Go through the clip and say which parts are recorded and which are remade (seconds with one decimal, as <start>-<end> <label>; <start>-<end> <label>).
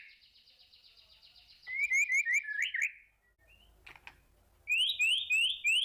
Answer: 0.0-5.8 recorded